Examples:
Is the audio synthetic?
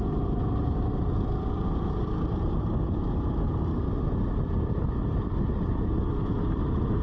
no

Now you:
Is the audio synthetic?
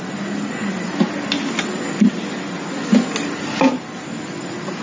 no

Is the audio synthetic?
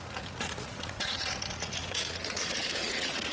yes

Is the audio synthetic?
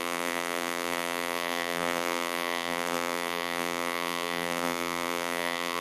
yes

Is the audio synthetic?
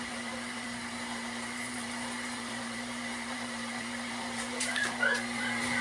yes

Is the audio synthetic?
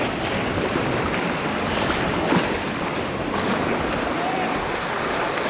no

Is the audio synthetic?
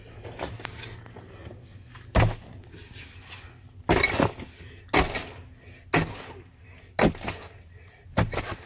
no